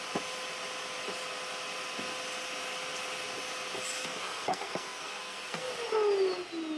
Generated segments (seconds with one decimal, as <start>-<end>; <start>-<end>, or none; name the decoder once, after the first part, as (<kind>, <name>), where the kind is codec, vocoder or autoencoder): 4.0-5.7 (codec, SNAC)